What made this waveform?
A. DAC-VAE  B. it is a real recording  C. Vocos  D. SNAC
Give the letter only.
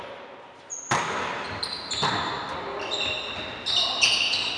B